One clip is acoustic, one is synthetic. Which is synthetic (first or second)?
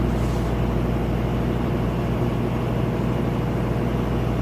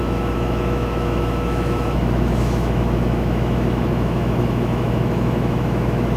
second